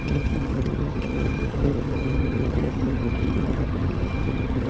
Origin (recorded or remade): remade